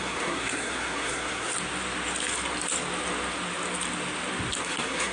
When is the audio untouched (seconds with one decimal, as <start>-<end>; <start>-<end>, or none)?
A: 1.5-4.6